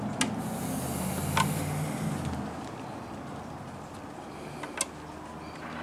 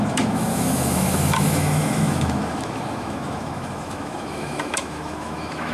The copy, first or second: second